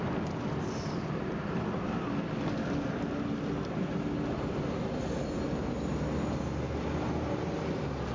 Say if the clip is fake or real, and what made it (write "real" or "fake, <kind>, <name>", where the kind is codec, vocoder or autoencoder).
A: real